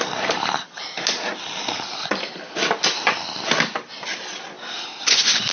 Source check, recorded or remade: recorded